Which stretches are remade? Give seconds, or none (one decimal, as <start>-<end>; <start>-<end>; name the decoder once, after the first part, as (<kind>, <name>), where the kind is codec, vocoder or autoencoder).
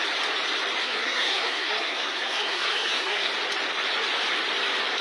0.8-3.3 (codec, SNAC)